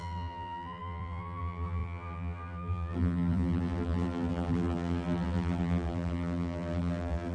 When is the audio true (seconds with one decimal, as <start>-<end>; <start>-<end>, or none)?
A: none